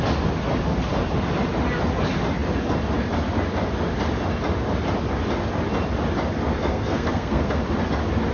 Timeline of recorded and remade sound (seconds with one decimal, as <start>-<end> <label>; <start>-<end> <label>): 0.0-6.5 recorded; 6.5-7.6 remade; 7.6-8.3 recorded